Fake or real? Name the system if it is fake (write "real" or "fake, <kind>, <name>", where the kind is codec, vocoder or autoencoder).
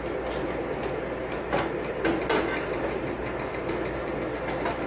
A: real